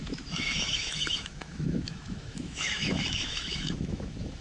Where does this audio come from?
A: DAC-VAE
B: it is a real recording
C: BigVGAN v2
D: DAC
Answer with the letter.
A